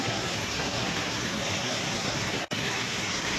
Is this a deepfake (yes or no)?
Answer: yes